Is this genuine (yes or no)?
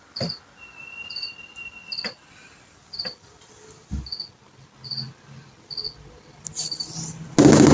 yes